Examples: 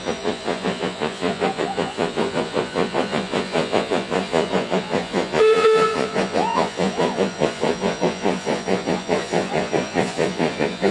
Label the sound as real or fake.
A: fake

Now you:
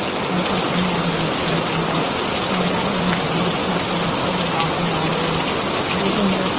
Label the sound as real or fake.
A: real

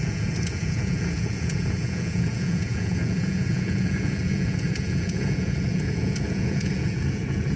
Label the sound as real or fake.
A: fake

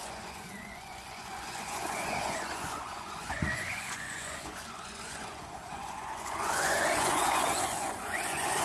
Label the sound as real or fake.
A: fake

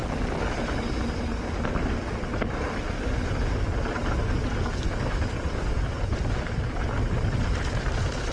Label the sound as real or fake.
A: real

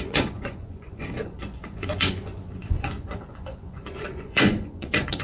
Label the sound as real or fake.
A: fake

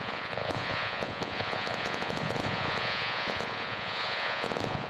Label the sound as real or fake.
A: fake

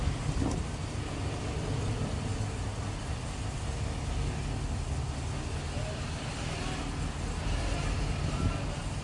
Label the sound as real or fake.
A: real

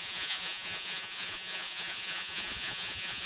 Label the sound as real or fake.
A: fake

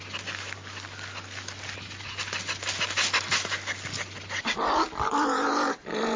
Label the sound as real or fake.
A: real